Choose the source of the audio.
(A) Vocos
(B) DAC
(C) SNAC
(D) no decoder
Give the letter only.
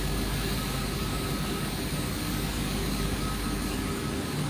B